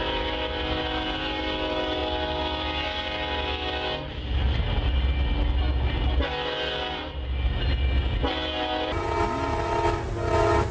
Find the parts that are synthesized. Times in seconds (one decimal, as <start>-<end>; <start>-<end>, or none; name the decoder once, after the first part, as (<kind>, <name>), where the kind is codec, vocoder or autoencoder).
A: none